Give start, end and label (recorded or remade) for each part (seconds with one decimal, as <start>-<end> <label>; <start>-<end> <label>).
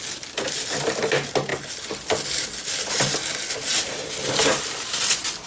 0.0-5.5 recorded